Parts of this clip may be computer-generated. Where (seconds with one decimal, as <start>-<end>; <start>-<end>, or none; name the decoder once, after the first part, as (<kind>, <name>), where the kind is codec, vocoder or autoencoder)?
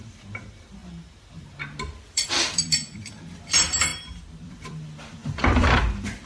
0.0-0.8 (vocoder, BigVGAN v2); 2.0-6.3